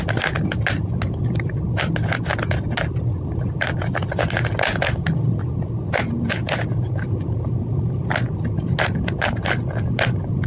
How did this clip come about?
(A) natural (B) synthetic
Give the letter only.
A